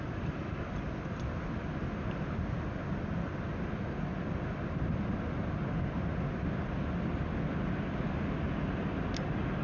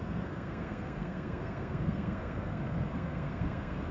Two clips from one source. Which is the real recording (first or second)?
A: first